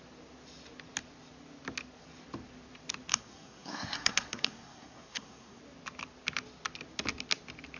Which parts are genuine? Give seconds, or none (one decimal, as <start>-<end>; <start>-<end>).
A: 0.0-3.1; 5.6-7.8